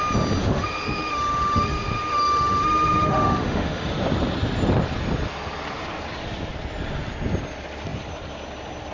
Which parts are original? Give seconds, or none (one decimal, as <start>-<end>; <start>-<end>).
0.0-0.4; 3.9-8.9

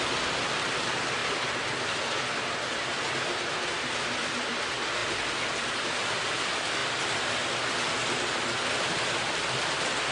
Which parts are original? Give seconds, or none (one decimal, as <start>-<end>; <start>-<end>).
0.0-10.1

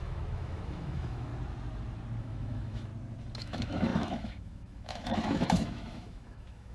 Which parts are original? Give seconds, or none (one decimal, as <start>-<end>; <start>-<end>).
1.3-2.2; 2.9-3.4

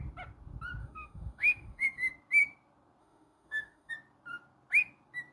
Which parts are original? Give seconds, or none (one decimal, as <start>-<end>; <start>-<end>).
0.0-0.8; 2.1-3.0; 3.9-5.3